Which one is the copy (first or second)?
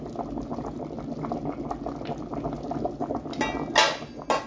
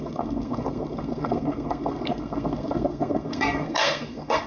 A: second